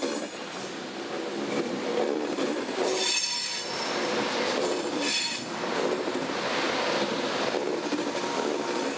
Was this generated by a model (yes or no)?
no